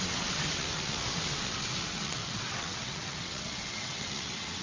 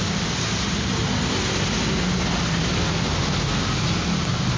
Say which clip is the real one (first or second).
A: second